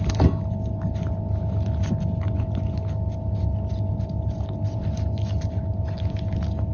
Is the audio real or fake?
real